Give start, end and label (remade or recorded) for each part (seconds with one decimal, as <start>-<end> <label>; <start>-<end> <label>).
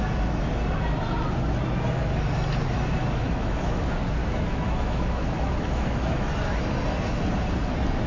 0.0-3.0 recorded; 3.0-3.8 remade; 3.8-4.2 recorded; 4.2-6.3 remade; 6.3-8.1 recorded